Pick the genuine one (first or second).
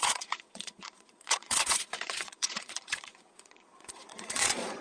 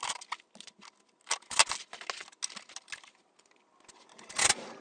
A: second